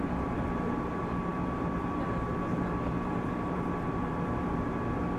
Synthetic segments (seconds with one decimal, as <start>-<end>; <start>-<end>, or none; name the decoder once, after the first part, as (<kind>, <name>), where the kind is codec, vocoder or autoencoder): none

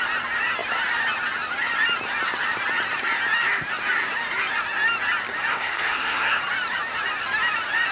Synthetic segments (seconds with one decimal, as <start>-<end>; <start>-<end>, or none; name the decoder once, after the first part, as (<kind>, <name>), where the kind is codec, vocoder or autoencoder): 5.5-6.4 (codec, SNAC)

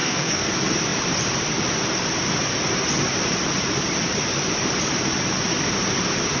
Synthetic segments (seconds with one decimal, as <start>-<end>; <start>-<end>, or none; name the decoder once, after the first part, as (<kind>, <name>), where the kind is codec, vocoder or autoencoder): 0.0-0.5 (codec, SNAC)

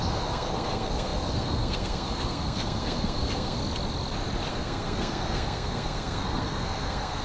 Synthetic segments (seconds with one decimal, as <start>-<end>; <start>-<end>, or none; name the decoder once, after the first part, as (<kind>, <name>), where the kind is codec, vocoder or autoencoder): 0.0-3.6 (codec, SNAC); 4.5-7.2

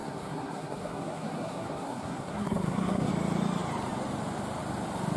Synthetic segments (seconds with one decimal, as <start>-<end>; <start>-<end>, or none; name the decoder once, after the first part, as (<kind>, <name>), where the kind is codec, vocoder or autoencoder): 0.0-3.1 (codec, SNAC)

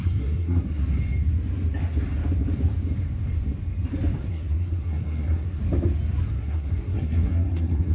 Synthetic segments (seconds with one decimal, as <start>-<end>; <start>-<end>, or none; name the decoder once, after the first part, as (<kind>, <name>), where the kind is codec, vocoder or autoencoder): 0.0-0.8 (codec, SNAC); 4.3-5.6; 6.3-7.9